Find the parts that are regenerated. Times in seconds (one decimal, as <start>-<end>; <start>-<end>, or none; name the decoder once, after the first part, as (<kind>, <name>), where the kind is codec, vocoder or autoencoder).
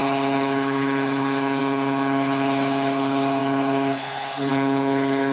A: 0.0-5.3 (codec, HILCodec)